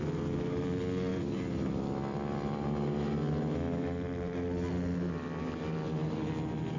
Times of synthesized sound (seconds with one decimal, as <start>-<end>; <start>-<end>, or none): none